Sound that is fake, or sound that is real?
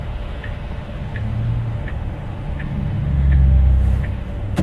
fake